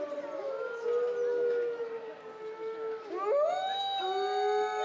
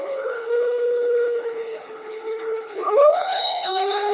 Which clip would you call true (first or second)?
first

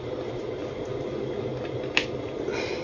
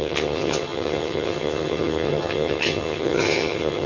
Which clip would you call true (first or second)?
first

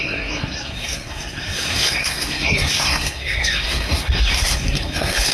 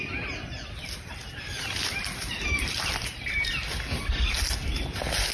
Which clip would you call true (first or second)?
second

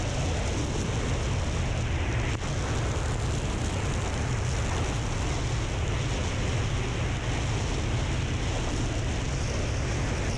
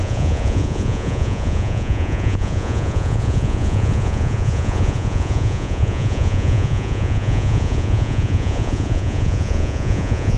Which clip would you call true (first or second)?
first